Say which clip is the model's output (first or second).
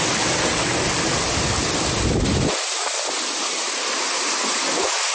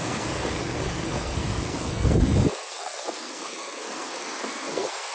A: second